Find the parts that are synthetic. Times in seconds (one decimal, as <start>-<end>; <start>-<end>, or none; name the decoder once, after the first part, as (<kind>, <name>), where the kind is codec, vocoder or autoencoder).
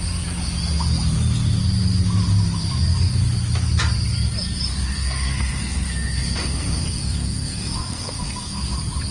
4.9-8.6 (codec, SNAC)